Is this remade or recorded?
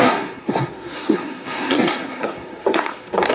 remade